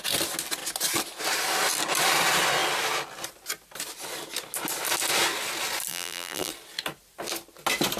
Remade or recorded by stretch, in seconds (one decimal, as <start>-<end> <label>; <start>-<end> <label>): 0.0-5.9 recorded; 5.9-6.5 remade; 6.5-8.0 recorded